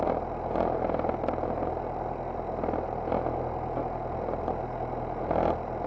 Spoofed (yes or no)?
no